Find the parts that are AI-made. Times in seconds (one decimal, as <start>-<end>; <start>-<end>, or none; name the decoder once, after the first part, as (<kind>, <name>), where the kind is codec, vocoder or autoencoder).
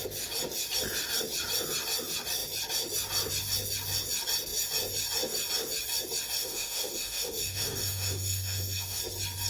6.4-9.0 (autoencoder, DAC-VAE)